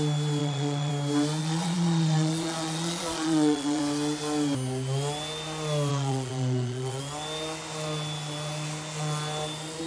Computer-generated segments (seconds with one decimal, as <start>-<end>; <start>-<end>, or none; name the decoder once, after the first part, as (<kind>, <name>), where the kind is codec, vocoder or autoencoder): 0.4-0.9 (vocoder, Vocos); 1.4-3.8; 5.9-7.0